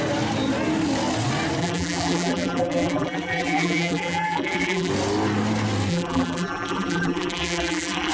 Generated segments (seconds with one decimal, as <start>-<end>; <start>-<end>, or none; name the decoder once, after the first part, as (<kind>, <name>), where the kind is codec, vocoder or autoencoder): 1.6-4.9 (vocoder, BigVGAN v2); 5.9-8.1